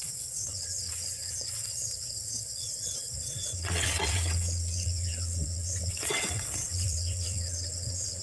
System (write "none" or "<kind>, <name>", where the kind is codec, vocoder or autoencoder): vocoder, WaveNeXt